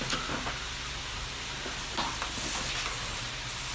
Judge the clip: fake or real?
real